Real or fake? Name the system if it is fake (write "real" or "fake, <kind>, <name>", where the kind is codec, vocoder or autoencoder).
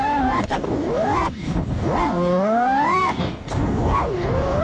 fake, codec, DAC